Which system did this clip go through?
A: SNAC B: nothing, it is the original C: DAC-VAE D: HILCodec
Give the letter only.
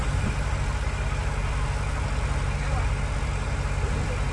B